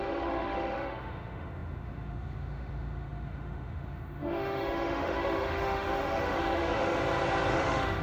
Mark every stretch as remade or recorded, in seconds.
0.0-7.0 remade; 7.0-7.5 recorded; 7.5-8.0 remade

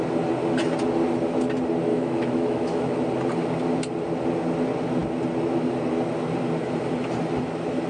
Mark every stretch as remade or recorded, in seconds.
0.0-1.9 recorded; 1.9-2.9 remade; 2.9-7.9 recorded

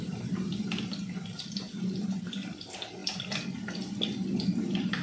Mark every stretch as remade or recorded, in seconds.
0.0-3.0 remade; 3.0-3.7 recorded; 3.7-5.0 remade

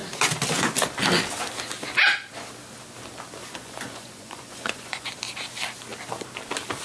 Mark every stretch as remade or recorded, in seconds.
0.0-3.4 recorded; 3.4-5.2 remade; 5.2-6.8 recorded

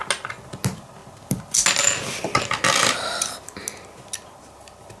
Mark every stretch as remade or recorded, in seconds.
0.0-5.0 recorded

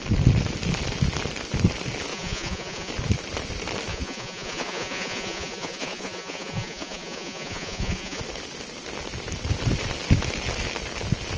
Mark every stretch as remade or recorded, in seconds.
0.0-2.1 recorded; 2.1-2.9 remade; 2.9-3.9 recorded; 3.9-8.2 remade; 8.2-11.4 recorded

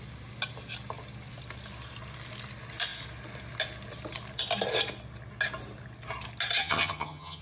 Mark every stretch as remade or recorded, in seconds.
0.0-6.6 recorded; 6.6-7.4 remade